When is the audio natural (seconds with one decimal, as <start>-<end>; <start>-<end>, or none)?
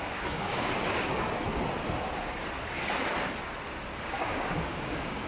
0.8-4.0